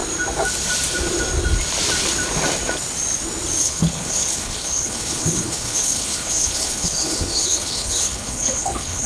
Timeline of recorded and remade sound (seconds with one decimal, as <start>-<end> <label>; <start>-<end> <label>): 0.0-3.6 recorded; 3.6-9.1 remade